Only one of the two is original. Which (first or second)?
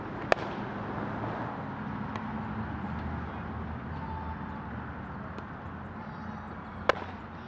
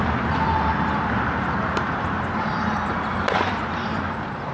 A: first